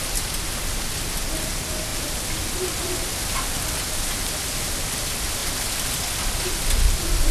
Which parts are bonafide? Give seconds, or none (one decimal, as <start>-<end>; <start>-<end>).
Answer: 0.0-7.3